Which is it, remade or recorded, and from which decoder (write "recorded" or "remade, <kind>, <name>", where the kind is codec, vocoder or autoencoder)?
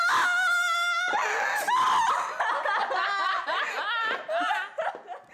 recorded